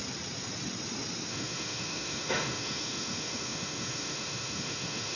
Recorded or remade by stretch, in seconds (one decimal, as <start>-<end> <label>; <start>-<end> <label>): 0.0-1.3 recorded; 1.3-5.2 remade